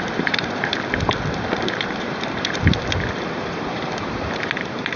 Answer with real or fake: fake